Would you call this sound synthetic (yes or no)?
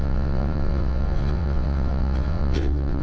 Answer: yes